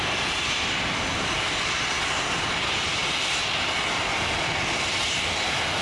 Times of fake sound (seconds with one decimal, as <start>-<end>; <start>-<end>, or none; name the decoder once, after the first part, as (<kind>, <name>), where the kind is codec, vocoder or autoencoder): none